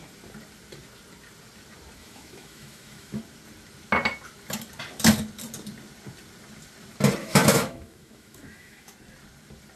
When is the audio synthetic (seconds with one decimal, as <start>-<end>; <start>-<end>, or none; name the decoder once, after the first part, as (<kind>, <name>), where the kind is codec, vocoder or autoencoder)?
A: 2.0-3.2 (autoencoder, DAC-VAE); 7.2-8.9